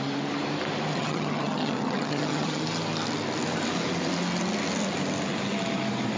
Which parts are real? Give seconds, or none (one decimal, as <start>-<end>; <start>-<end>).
0.0-0.9; 2.6-6.2